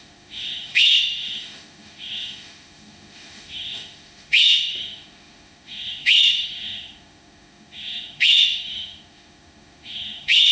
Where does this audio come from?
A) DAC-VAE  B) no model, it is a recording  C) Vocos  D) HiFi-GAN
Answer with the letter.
A